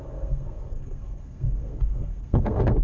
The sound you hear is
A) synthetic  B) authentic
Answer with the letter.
A